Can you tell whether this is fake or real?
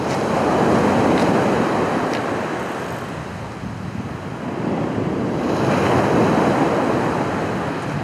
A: real